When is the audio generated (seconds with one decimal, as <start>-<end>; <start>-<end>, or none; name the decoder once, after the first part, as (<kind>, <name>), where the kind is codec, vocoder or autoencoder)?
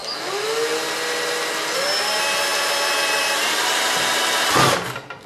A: none